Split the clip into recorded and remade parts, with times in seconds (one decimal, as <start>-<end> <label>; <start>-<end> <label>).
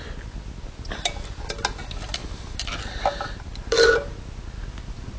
0.0-5.2 recorded